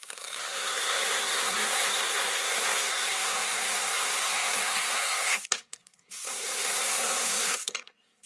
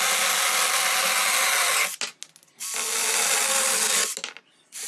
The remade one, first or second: first